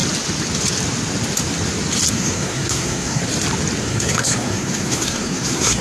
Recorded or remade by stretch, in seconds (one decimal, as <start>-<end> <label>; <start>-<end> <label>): 0.0-2.1 recorded; 2.1-3.2 remade; 3.2-3.8 recorded; 3.8-5.8 remade